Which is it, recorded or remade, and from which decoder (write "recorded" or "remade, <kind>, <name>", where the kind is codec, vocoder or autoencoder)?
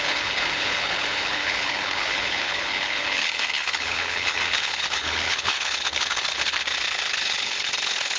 remade, codec, HILCodec